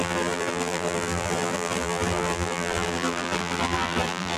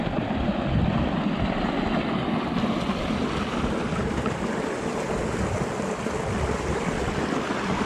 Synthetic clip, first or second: first